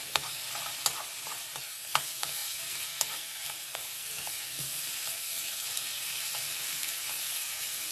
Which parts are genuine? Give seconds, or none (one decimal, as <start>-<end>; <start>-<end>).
0.5-1.6